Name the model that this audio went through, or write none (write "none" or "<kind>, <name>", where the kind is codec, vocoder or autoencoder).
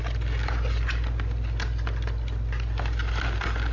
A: none